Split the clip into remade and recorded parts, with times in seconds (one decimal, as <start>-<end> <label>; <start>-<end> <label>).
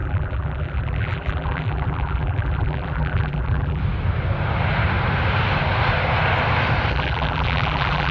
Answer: 0.0-3.8 remade; 3.8-6.9 recorded; 6.9-8.1 remade